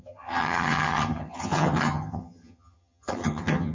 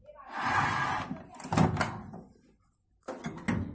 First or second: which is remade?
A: first